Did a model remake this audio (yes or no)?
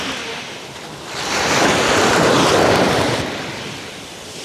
no